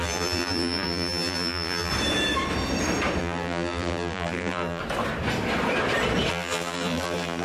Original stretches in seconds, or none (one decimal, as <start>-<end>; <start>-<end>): 1.9-3.2; 4.8-6.3